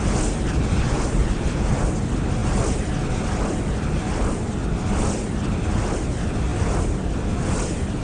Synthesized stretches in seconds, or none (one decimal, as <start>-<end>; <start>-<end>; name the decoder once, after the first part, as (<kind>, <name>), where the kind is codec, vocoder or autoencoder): 1.2-1.9 (vocoder, BigVGAN v2); 6.5-7.2